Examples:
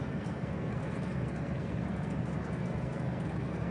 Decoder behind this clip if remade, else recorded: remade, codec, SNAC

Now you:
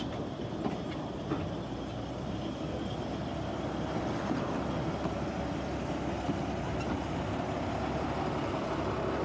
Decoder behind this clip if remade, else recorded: recorded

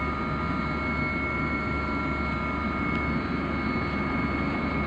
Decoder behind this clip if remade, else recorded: recorded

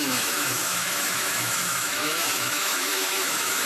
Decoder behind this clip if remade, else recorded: remade, autoencoder, DAC-VAE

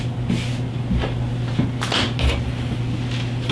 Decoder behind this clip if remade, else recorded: recorded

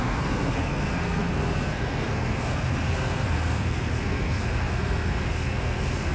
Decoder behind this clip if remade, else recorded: remade, codec, SNAC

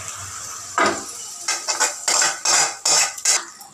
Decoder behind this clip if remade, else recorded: recorded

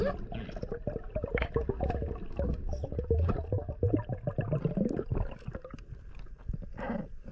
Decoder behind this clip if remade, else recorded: recorded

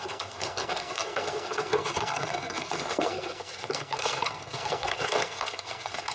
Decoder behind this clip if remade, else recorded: remade, codec, SNAC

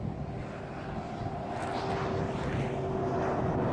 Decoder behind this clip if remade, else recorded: recorded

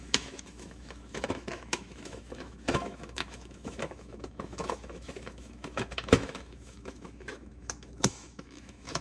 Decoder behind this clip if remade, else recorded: remade, autoencoder, DAC-VAE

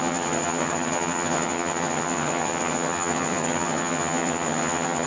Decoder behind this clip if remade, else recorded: remade, vocoder, HiFi-GAN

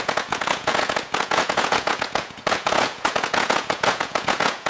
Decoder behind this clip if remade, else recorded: remade, vocoder, Vocos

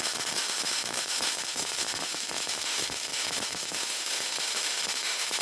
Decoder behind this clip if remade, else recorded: remade, autoencoder, DAC-VAE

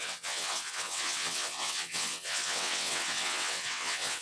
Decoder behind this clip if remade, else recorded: remade, vocoder, WaveNeXt